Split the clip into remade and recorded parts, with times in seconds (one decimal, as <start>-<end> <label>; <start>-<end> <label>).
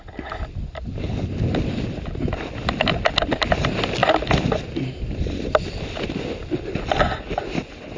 0.0-8.0 recorded